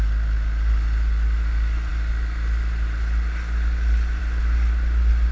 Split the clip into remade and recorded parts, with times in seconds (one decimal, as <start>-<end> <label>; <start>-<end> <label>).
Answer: 0.0-5.3 recorded